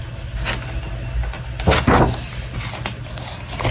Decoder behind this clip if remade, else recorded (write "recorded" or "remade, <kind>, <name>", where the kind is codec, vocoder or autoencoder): recorded